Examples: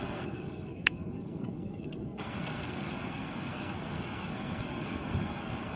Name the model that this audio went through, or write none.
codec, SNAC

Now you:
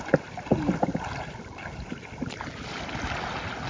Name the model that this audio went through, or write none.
none